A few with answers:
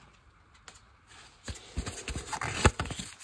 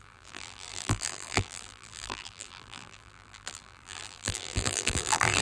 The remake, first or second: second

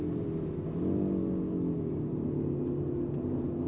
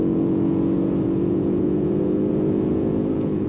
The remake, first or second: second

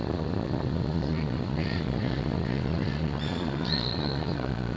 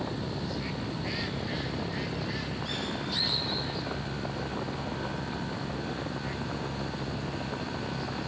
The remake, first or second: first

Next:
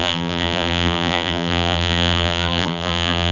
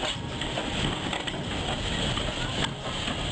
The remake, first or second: first